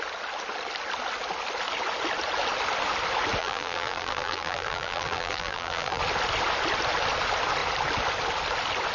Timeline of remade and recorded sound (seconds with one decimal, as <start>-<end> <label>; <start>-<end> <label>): 0.0-3.4 recorded; 3.4-6.0 remade; 6.0-8.9 recorded